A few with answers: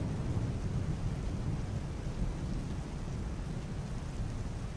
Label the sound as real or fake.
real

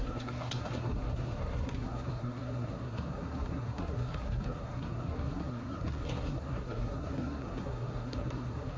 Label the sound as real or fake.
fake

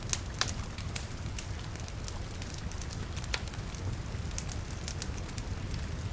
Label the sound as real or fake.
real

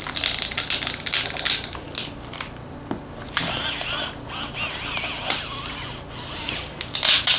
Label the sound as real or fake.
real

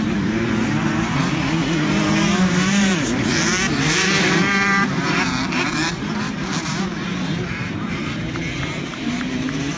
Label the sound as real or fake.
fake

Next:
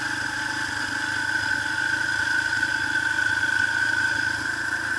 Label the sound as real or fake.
real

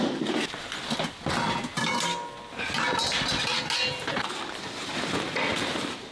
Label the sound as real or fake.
real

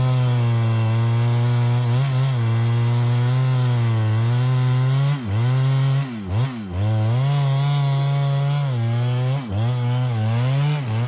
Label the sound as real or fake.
real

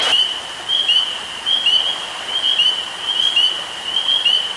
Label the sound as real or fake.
real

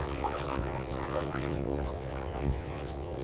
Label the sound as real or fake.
fake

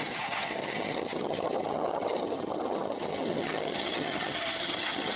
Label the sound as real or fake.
fake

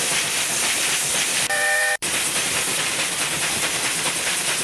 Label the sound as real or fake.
fake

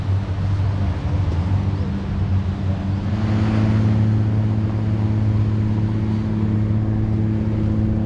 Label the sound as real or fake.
real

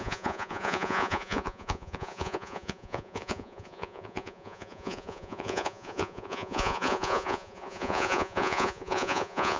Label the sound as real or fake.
fake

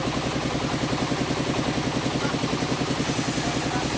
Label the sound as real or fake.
real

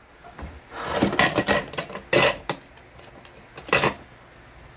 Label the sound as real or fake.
real